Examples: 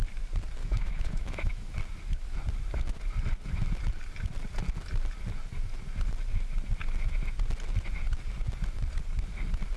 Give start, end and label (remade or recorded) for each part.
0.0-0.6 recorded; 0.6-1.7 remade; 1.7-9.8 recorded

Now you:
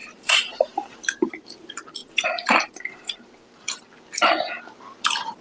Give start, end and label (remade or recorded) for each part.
0.0-1.3 remade; 1.3-2.0 recorded; 2.0-3.9 remade; 3.9-5.4 recorded

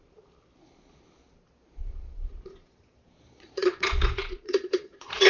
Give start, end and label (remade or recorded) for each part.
0.0-1.8 recorded; 1.8-5.3 remade

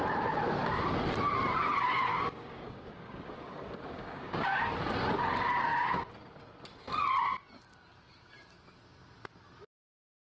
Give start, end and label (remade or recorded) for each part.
0.0-2.1 recorded; 2.1-4.6 remade; 4.6-10.3 recorded